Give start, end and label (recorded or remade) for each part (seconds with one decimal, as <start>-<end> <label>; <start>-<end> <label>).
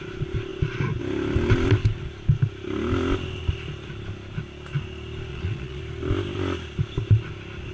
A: 0.0-5.3 recorded; 5.3-5.8 remade; 5.8-7.7 recorded